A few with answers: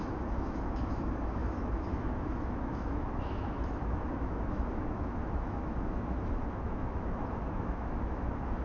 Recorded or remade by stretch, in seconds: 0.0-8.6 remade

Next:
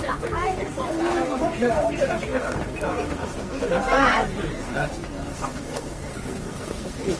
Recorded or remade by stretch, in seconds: 0.0-7.2 remade

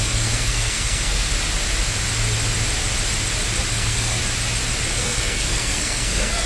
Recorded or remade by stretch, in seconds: 0.0-1.3 remade; 1.3-3.7 recorded; 3.7-4.2 remade; 4.2-4.9 recorded; 4.9-6.5 remade

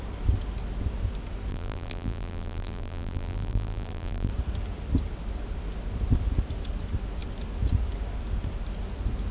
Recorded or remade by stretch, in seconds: 0.0-1.5 recorded; 1.5-4.3 remade; 4.3-9.3 recorded

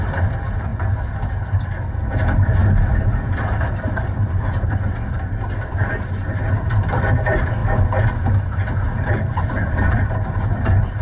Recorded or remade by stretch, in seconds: 0.0-0.7 remade; 0.7-2.1 recorded; 2.1-11.0 remade